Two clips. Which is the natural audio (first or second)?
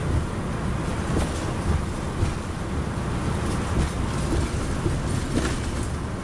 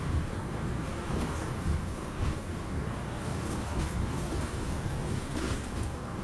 first